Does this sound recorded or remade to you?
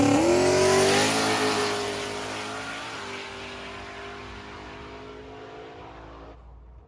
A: recorded